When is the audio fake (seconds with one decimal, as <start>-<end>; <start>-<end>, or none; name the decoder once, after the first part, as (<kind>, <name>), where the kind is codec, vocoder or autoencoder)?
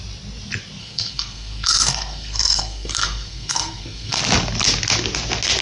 0.8-4.2 (codec, SNAC)